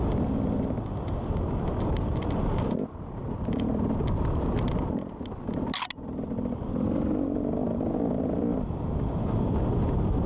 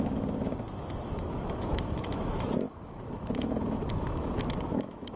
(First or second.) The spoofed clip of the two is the second